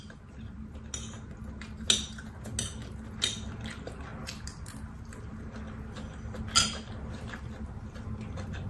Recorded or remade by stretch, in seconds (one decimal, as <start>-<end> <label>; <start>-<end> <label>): 0.0-8.7 recorded